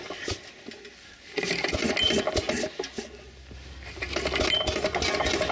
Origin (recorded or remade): recorded